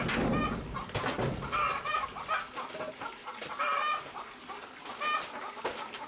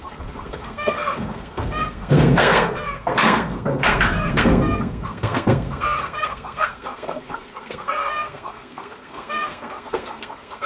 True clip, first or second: first